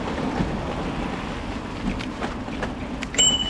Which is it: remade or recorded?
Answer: recorded